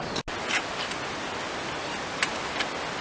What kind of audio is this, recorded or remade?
recorded